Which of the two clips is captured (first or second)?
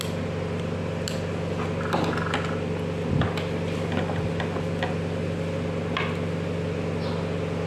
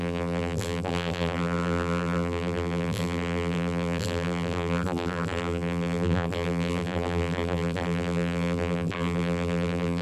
first